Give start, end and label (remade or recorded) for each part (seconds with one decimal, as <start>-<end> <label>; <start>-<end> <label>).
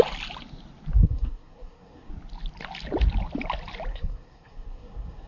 0.0-1.0 recorded; 1.0-2.1 remade; 2.1-3.9 recorded; 3.9-5.3 remade